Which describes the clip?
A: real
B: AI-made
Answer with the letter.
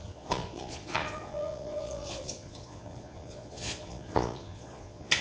B